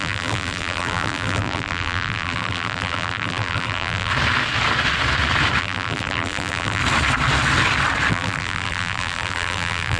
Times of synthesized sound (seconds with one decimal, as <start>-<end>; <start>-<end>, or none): 0.0-4.1; 5.6-6.8; 8.1-10.0